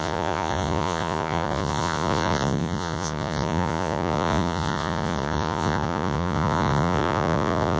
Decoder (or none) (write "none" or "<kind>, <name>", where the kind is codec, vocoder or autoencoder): vocoder, Vocos